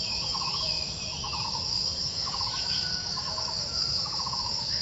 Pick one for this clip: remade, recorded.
remade